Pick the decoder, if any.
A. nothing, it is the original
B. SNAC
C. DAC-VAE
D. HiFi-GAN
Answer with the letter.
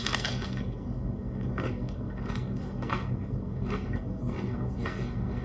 B